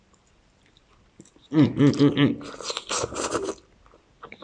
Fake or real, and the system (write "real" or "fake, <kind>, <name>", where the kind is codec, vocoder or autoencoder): real